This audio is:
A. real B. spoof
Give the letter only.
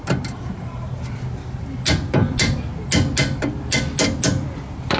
A